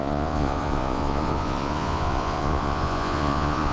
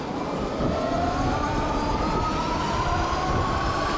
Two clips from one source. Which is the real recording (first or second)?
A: second